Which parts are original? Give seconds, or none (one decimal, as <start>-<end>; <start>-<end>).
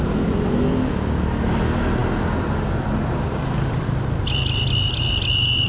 0.0-5.7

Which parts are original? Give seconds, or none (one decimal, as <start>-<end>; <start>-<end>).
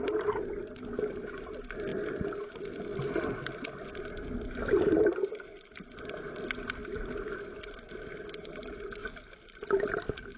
0.0-10.4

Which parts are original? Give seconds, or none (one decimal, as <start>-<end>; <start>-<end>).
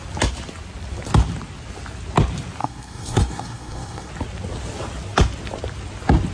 0.0-2.6; 4.1-6.3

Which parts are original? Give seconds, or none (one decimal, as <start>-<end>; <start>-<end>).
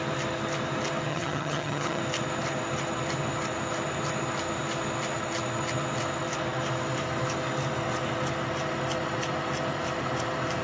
0.0-1.1; 2.0-10.6